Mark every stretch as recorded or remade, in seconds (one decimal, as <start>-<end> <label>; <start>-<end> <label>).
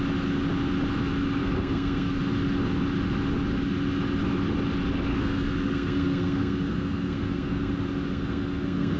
0.0-1.4 recorded; 1.4-2.2 remade; 2.2-5.1 recorded; 5.1-7.7 remade; 7.7-8.1 recorded; 8.1-9.0 remade